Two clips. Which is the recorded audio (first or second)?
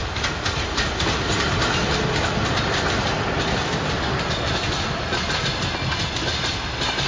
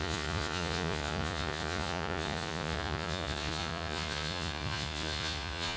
first